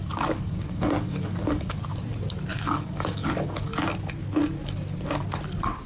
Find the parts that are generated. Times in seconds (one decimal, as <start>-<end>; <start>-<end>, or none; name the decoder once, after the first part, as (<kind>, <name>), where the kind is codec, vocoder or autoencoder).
0.0-1.8 (codec, DAC); 2.5-3.7